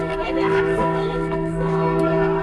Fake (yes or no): yes